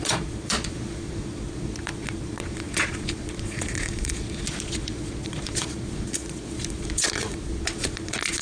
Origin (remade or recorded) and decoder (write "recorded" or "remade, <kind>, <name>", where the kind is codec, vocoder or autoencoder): remade, vocoder, Vocos